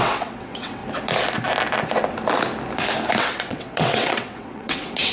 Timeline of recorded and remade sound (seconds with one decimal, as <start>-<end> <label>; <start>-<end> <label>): 0.0-0.8 remade; 0.8-3.2 recorded; 3.2-5.1 remade